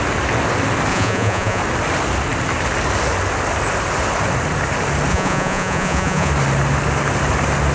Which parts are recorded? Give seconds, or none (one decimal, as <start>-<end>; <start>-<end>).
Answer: 0.0-0.9; 1.6-5.1; 6.3-7.7